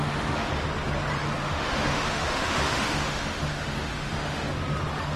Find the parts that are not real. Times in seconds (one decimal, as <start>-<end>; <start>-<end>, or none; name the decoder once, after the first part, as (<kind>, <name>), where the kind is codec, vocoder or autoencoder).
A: 0.0-0.5 (autoencoder, DAC-VAE); 1.4-4.5